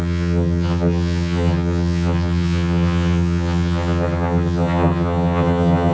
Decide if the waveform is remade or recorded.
remade